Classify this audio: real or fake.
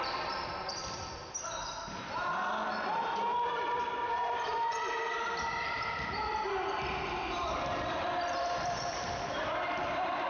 fake